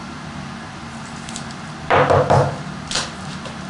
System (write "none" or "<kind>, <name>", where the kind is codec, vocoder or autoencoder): vocoder, BigVGAN v2